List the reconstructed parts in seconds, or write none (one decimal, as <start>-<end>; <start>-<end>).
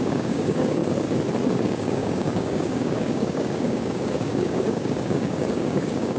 0.0-0.8; 1.5-6.2